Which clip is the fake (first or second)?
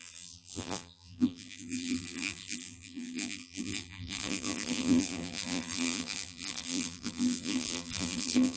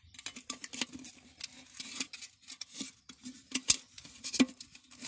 first